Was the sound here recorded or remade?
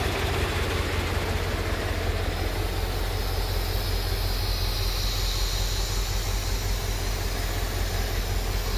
recorded